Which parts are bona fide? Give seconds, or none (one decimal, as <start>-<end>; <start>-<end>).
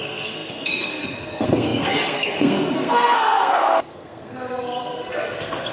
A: none